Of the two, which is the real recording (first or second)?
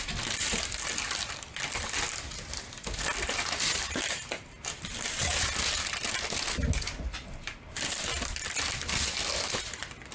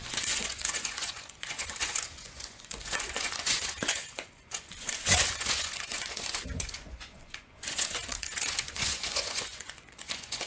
first